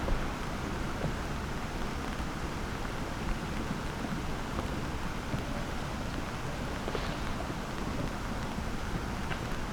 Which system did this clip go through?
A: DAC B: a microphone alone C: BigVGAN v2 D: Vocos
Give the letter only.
B